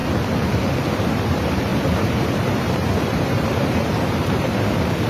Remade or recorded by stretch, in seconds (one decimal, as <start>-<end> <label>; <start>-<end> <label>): 0.0-0.9 recorded; 0.9-5.1 remade